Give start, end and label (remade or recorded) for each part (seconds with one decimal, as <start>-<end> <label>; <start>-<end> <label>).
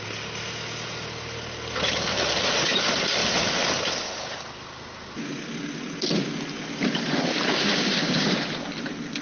0.0-7.5 recorded; 7.5-8.3 remade; 8.3-9.2 recorded